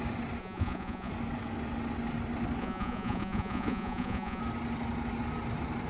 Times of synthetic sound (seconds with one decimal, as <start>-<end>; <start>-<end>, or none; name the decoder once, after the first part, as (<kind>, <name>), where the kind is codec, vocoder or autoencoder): 0.4-1.1 (vocoder, Vocos); 2.6-4.4